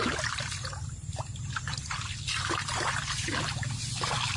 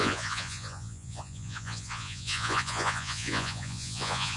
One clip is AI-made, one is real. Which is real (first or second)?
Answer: first